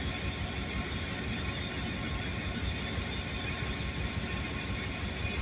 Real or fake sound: real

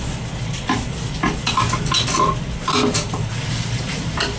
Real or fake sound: real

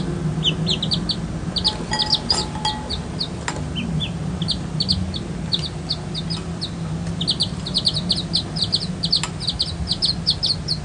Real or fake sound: real